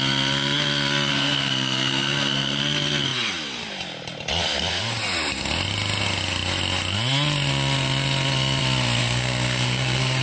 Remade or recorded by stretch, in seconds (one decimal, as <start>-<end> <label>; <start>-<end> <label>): 0.0-1.1 recorded; 1.1-2.6 remade; 2.6-9.0 recorded; 9.0-10.2 remade